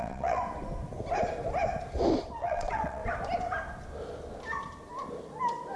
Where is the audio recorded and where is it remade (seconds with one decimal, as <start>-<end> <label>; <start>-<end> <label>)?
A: 0.0-0.4 remade; 0.4-2.4 recorded; 2.4-3.0 remade; 3.0-5.8 recorded